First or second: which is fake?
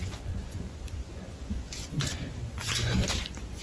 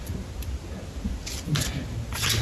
first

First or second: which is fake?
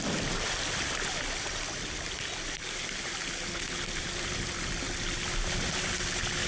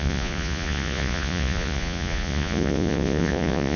second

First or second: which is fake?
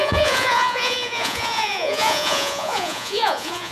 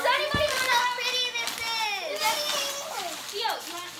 first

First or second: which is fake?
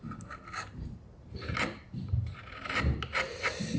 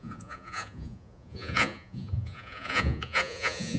second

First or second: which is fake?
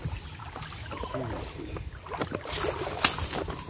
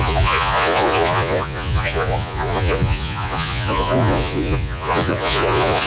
second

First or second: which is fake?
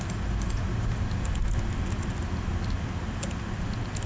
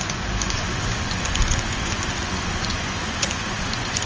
second